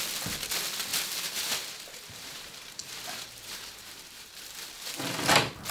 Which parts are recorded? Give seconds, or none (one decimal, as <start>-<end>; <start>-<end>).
0.0-0.9; 4.3-5.7